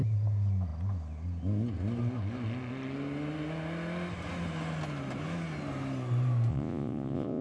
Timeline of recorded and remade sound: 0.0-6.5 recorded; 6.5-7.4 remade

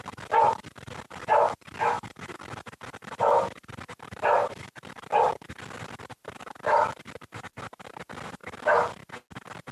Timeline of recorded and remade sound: 0.0-4.4 recorded; 4.4-5.0 remade; 5.0-9.7 recorded

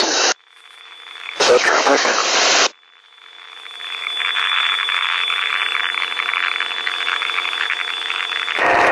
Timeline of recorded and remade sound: 0.0-2.2 remade; 2.2-3.0 recorded; 3.0-5.5 remade; 5.5-6.9 recorded; 6.9-8.9 remade

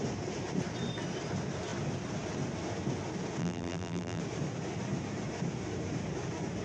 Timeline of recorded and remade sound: 0.0-3.4 recorded; 3.4-4.2 remade; 4.2-6.6 recorded

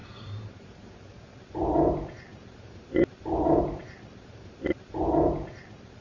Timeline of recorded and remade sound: 0.0-0.9 remade; 0.9-2.3 recorded; 2.3-5.1 remade; 5.1-6.0 recorded

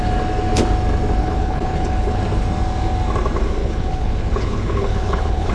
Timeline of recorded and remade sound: 0.0-1.2 recorded; 1.2-2.2 remade; 2.2-3.6 recorded; 3.6-5.5 remade